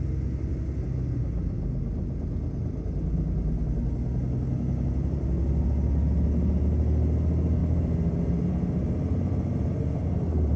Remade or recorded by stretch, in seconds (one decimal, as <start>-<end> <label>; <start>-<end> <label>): 0.0-10.6 recorded